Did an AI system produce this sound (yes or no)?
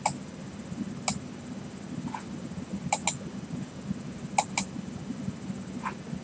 no